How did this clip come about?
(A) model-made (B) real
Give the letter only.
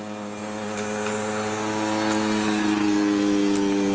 B